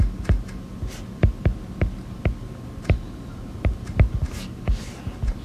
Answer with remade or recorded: recorded